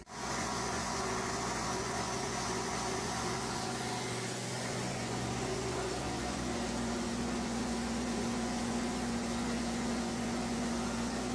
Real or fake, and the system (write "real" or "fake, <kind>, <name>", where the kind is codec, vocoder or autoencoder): fake, vocoder, Vocos